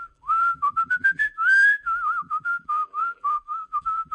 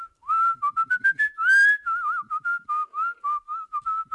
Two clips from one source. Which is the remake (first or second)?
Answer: first